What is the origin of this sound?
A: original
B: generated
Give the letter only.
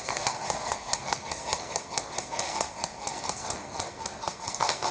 B